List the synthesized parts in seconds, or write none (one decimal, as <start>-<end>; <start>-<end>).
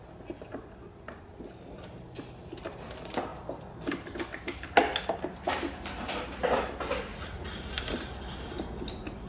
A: 7.1-7.7